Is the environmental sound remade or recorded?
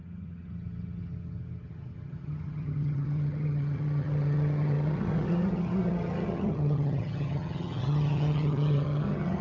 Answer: remade